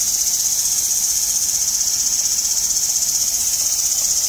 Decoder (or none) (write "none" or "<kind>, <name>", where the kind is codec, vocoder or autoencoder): none